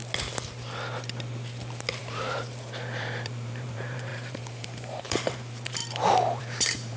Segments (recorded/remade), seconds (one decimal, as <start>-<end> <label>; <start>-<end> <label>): 0.0-2.0 recorded; 2.0-5.8 remade; 5.8-6.4 recorded; 6.4-7.0 remade